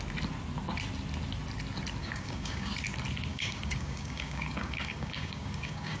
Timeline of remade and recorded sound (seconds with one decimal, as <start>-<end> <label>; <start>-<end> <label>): 0.0-2.0 recorded; 2.0-2.7 remade; 2.7-3.3 recorded; 3.3-6.0 remade